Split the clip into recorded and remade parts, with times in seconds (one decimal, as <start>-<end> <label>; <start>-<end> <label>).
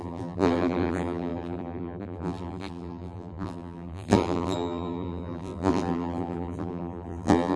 0.0-7.6 remade